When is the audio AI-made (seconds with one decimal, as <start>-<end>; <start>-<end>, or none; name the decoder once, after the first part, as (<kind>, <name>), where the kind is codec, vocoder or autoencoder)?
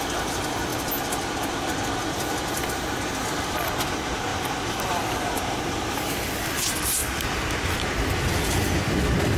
none